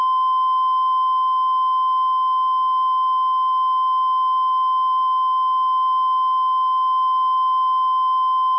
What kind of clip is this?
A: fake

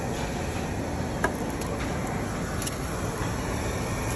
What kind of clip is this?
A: real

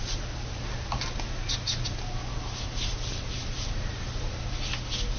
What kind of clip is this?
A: real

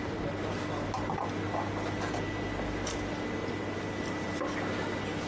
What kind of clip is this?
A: real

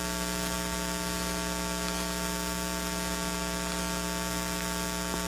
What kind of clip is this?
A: real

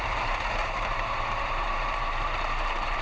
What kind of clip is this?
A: fake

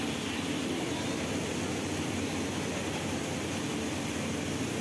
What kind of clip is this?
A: real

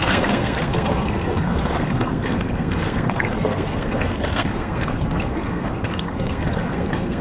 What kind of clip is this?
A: fake